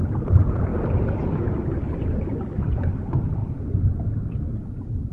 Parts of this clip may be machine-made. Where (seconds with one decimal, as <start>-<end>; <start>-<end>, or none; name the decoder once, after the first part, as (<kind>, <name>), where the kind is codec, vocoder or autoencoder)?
0.0-0.7 (vocoder, BigVGAN v2); 1.3-1.8; 2.6-3.4; 4.4-5.1